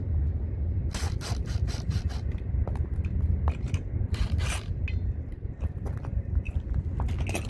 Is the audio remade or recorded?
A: recorded